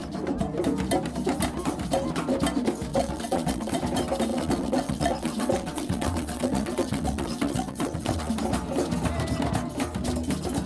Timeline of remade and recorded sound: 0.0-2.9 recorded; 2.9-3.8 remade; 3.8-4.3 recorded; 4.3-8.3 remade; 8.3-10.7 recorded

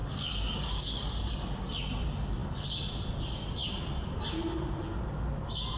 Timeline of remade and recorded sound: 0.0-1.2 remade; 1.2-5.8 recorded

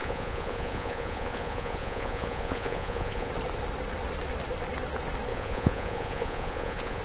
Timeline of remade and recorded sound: 0.0-3.3 remade; 3.3-5.3 recorded; 5.3-7.0 remade